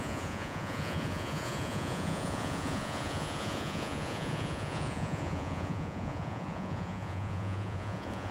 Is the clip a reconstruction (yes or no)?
yes